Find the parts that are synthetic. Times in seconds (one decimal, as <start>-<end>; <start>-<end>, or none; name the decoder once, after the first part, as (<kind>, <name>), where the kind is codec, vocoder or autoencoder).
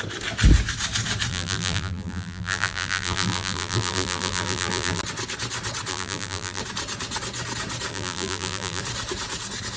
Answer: 1.3-5.0 (vocoder, BigVGAN v2); 5.9-6.6; 7.9-8.8